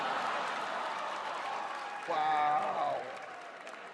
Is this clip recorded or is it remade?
remade